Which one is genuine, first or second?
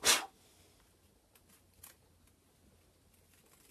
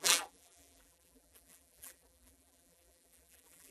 first